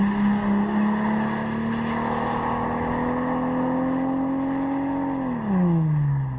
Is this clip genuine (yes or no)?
yes